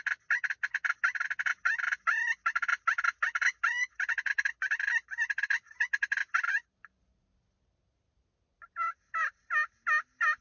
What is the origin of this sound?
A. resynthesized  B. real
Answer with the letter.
B